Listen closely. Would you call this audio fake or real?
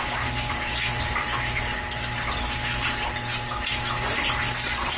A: real